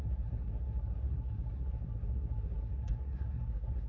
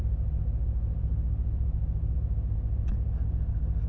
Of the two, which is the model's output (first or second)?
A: first